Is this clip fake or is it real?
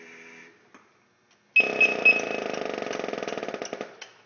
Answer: real